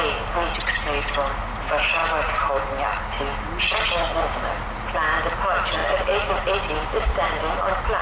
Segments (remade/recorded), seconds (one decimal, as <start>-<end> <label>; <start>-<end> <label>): 0.0-8.0 recorded